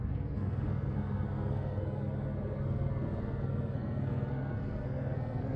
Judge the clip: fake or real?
fake